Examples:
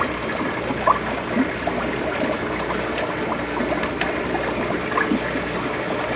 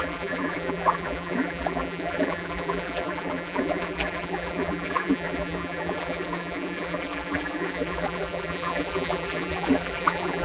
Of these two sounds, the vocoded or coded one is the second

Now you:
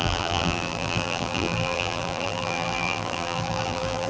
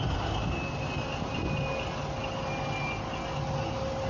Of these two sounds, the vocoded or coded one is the first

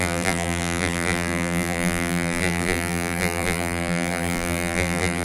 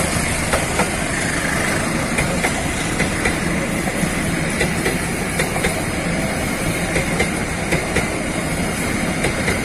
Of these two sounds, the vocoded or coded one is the first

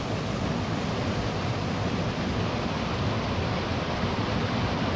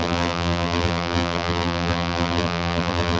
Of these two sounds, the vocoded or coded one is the second